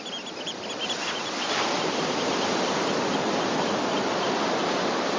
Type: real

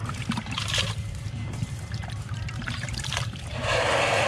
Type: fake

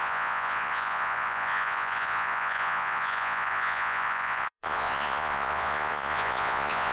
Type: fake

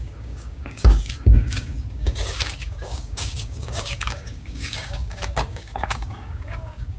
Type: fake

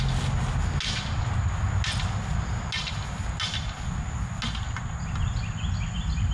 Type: real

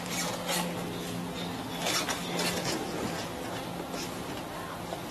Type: real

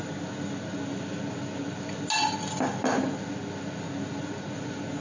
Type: real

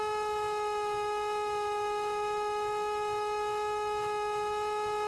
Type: fake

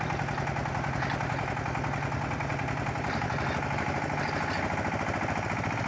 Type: real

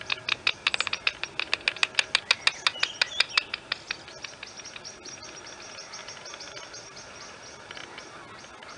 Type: real